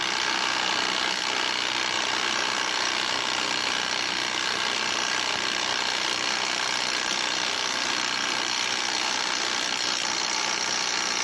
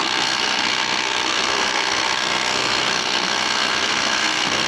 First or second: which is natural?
first